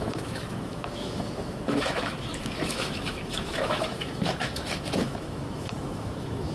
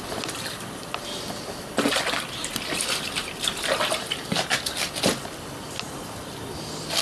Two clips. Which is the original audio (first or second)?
second